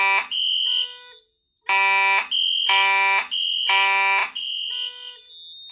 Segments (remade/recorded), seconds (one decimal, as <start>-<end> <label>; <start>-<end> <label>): 0.0-5.7 recorded